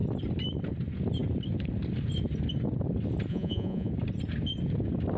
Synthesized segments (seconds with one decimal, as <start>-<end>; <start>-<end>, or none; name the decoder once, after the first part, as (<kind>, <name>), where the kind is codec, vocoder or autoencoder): 3.3-3.9 (vocoder, Vocos)